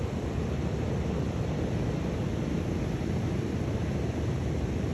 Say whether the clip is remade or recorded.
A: recorded